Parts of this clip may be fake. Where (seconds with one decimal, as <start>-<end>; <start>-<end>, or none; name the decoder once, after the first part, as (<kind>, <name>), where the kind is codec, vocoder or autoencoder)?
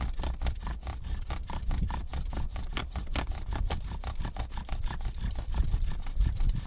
none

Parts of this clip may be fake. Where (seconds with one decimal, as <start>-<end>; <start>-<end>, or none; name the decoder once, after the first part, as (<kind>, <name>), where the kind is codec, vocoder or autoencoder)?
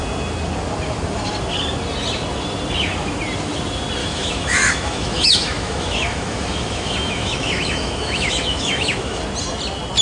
4.0-9.2 (autoencoder, DAC-VAE)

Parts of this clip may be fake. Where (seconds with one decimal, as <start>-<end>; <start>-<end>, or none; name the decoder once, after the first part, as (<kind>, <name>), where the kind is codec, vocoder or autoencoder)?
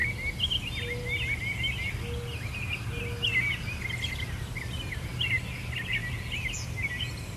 none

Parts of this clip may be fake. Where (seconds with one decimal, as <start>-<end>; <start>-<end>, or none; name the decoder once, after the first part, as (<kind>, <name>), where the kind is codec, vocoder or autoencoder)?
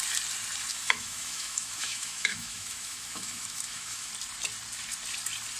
0.7-4.1 (autoencoder, DAC-VAE)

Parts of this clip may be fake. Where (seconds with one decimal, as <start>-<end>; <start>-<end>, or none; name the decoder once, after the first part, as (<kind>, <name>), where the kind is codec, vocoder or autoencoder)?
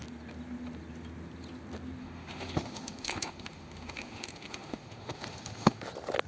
2.0-5.8 (autoencoder, DAC-VAE)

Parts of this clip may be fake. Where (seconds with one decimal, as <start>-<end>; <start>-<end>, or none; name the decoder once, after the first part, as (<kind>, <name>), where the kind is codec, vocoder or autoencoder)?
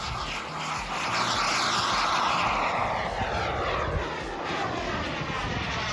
none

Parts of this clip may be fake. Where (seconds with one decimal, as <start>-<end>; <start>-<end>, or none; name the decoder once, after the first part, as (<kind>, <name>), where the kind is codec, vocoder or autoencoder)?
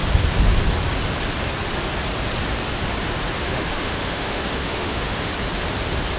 3.4-5.3 (autoencoder, DAC-VAE)